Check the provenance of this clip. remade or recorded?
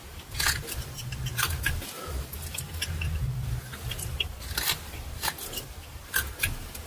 recorded